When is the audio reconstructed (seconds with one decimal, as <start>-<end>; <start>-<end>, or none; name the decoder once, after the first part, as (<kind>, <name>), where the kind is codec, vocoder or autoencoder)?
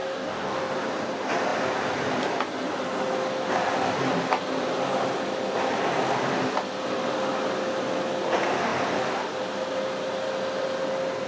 0.0-0.7 (codec, DAC)